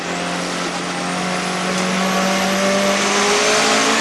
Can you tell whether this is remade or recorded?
recorded